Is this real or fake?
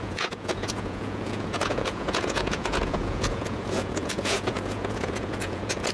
fake